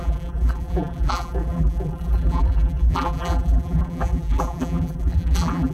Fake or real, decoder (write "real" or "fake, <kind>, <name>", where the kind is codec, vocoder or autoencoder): fake, vocoder, BigVGAN v2